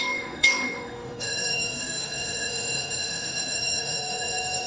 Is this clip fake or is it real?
fake